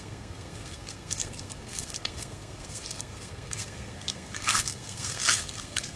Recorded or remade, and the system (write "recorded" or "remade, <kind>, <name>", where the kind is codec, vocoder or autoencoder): remade, codec, SNAC